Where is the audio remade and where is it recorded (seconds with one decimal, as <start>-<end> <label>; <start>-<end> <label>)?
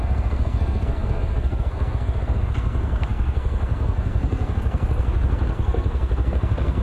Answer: 0.0-6.8 remade